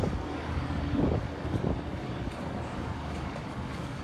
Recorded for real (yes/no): no